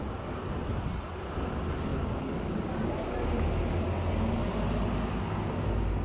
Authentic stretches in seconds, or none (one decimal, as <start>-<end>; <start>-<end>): 0.0-6.0